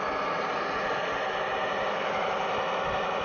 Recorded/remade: recorded